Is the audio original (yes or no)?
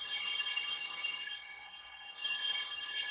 no